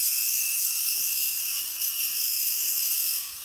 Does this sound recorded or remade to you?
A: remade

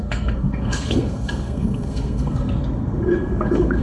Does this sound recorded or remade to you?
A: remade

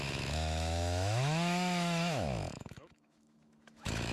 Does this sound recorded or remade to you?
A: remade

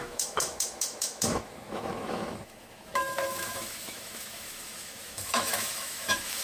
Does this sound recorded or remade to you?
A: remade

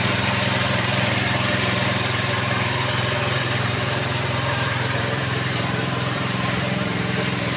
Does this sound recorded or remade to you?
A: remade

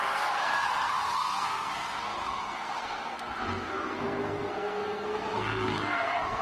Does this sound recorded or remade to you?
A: remade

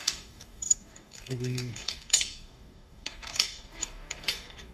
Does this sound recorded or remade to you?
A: remade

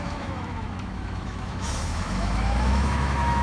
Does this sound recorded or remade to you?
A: remade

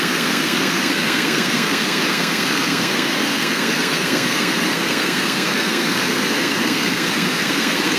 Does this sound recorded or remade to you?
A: remade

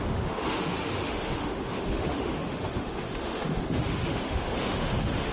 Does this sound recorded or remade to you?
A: remade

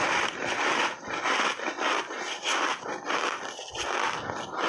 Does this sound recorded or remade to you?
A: recorded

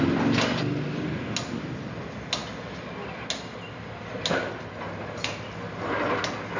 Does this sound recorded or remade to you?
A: recorded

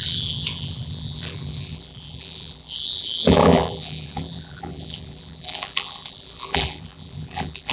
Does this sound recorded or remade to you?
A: remade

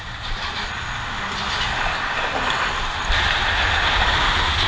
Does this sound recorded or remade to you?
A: recorded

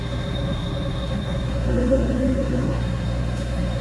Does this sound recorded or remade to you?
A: remade